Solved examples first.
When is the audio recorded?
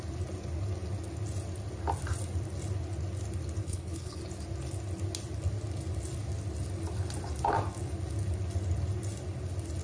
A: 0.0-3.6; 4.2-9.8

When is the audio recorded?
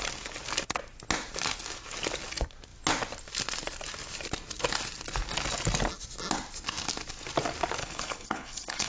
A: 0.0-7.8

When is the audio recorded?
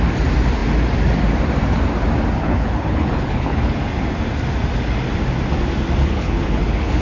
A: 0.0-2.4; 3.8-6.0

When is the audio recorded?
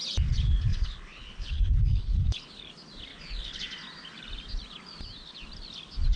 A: 0.0-0.7; 2.7-3.1; 3.6-6.2